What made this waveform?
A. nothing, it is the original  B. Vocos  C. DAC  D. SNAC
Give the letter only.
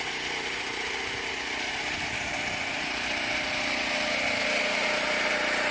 A